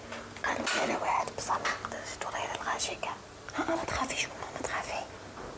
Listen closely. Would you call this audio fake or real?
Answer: real